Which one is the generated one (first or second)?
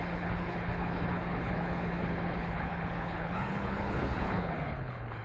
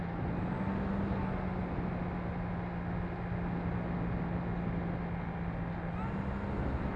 first